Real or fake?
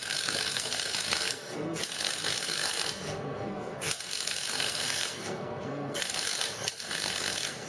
fake